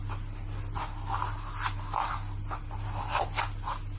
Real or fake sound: real